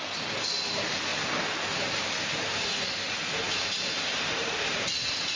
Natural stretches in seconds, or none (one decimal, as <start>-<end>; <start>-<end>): 0.0-5.4